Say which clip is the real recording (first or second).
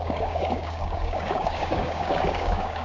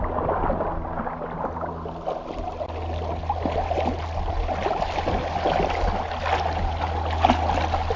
second